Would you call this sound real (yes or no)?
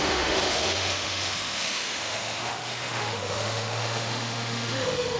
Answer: no